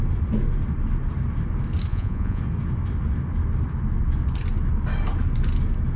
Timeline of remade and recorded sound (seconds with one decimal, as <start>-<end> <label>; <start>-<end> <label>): 0.0-1.9 recorded; 1.9-2.4 remade; 2.4-6.0 recorded